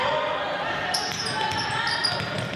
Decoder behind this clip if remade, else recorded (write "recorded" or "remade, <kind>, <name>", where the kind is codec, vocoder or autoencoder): recorded